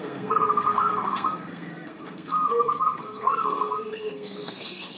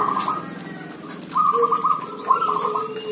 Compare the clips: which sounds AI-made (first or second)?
first